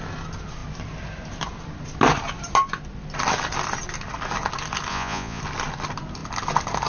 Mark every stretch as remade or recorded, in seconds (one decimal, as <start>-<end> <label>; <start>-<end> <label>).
0.0-4.9 recorded; 4.9-5.4 remade; 5.4-6.9 recorded